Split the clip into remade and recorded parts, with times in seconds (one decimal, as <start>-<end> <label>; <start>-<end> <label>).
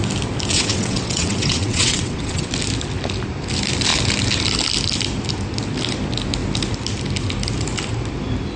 0.0-0.5 recorded; 0.5-2.5 remade; 2.5-8.6 recorded